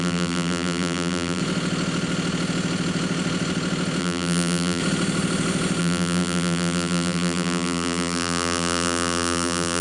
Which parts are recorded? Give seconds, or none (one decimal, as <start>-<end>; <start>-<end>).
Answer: 1.4-4.0; 4.8-5.8